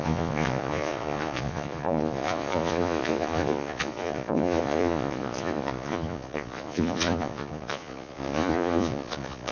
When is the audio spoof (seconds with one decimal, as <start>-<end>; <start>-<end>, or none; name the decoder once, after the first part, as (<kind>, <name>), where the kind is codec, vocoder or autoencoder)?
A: 0.0-9.5 (vocoder, Vocos)